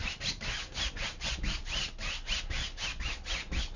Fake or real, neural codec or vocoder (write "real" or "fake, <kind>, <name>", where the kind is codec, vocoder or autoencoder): real